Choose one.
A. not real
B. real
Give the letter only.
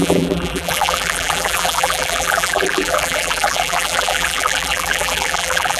A